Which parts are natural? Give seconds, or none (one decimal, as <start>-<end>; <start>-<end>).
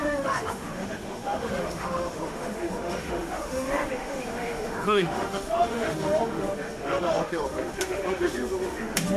none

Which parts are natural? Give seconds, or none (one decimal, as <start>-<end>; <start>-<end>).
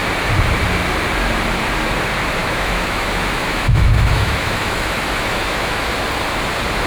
0.0-2.4; 5.9-6.9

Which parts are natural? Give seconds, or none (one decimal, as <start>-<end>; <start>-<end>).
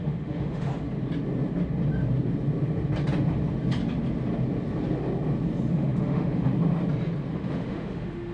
0.7-5.7; 6.5-7.3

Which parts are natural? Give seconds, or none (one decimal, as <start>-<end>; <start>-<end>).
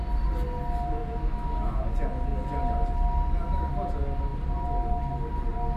0.0-1.0; 1.8-5.8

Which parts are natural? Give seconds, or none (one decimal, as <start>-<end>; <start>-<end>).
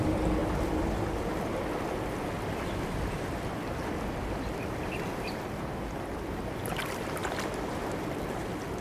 0.0-8.8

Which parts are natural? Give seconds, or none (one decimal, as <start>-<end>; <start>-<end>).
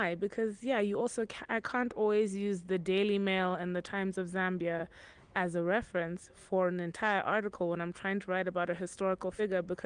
0.0-4.8; 9.4-9.9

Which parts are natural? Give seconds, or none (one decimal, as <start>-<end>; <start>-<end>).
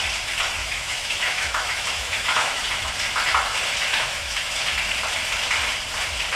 0.0-0.6; 2.9-3.9; 4.6-6.4